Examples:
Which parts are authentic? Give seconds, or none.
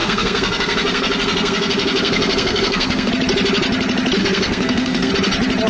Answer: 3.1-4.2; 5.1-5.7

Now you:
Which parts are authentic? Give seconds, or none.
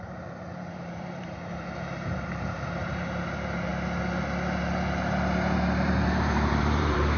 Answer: 3.7-5.9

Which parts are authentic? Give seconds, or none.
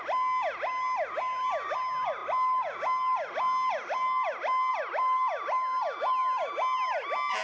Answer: 0.0-7.4